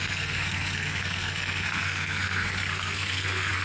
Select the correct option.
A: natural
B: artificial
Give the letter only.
B